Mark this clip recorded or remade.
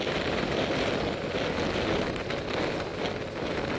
recorded